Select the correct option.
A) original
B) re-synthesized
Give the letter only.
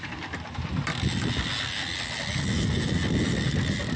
A